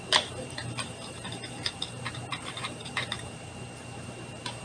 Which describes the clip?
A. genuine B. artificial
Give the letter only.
B